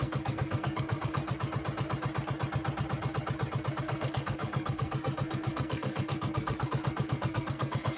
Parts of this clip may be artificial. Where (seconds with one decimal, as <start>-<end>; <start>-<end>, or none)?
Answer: 0.0-1.2; 3.8-8.0